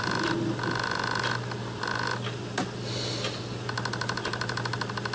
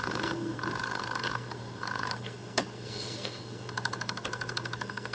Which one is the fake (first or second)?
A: second